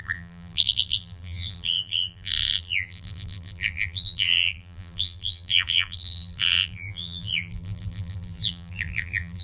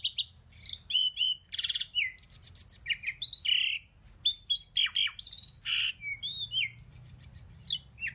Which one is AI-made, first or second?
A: first